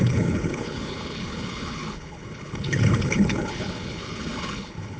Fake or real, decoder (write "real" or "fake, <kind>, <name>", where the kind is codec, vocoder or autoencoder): fake, codec, HILCodec